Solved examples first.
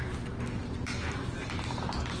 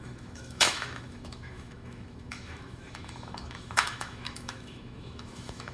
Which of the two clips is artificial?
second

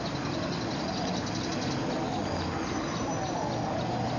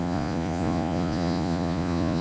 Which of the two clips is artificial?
second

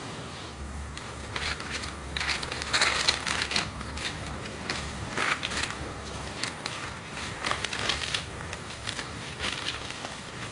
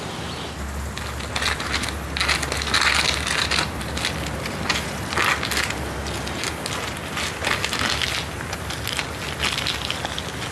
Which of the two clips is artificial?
first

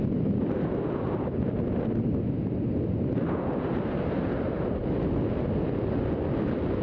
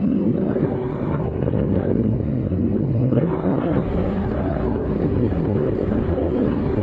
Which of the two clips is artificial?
second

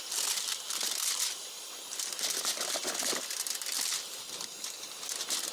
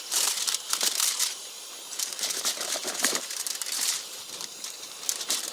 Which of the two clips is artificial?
second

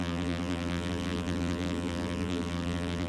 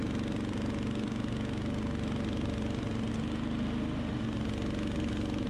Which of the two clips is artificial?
first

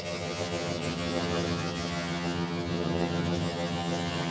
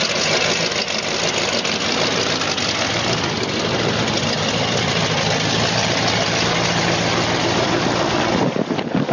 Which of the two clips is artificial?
first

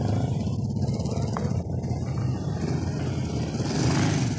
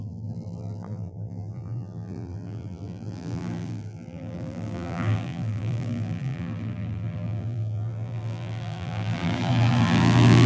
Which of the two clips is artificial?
second